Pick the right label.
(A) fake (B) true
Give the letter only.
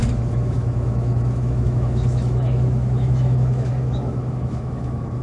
A